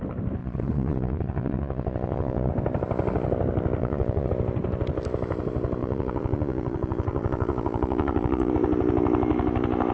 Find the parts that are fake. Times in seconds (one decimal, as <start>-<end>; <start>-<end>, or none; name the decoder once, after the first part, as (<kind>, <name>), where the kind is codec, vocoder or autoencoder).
0.4-2.5 (vocoder, Vocos); 3.8-4.3; 5.8-8.5